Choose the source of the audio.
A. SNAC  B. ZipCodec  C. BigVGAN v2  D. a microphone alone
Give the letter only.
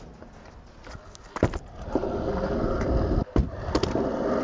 D